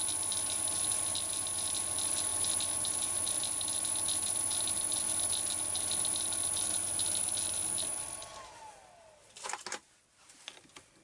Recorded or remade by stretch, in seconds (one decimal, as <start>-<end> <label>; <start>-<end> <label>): 0.0-11.0 recorded